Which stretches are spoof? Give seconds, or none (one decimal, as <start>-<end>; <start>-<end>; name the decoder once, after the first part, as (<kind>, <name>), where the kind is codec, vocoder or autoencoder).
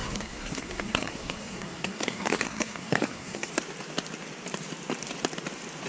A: 0.0-3.5 (codec, SNAC)